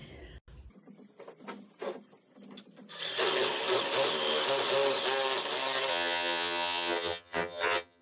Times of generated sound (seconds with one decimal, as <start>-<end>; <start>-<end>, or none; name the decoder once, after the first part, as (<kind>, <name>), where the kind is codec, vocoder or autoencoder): 5.9-8.0 (vocoder, HiFi-GAN)